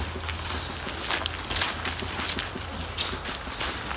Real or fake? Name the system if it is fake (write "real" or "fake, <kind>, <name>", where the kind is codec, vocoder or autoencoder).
real